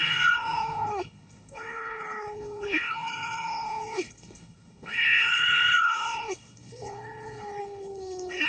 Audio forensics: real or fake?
fake